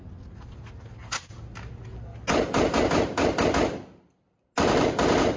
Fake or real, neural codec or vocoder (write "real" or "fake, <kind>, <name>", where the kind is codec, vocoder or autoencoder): real